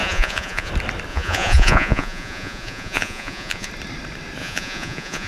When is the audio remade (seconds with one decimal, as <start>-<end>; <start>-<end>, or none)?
0.0-0.7; 1.1-3.7; 4.4-5.3